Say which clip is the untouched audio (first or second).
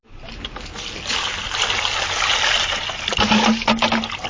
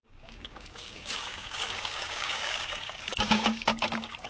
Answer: first